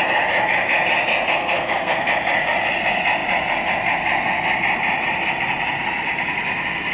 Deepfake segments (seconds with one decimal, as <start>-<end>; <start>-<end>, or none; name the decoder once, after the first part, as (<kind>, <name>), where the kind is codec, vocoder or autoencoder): 1.3-2.1 (codec, SNAC)